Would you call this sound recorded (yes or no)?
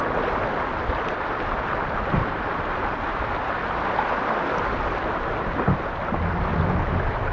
yes